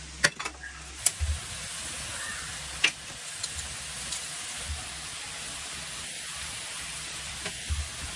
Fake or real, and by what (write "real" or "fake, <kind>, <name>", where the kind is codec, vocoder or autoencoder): real